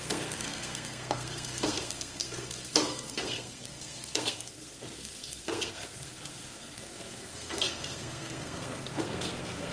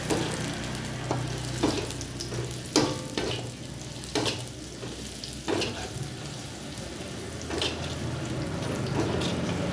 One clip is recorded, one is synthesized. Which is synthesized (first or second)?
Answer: first